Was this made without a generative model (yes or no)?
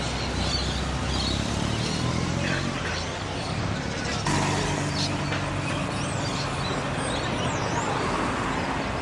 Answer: yes